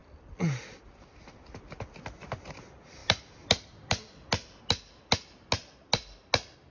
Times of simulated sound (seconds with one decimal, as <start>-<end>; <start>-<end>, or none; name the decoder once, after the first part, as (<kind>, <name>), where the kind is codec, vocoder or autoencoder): none